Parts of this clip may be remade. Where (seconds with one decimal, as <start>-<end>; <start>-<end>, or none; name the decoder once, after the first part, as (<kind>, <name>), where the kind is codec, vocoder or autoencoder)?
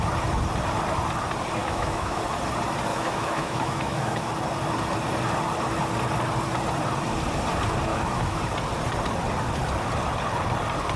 1.6-2.2 (autoencoder, DAC-VAE); 2.9-4.3; 7.9-8.4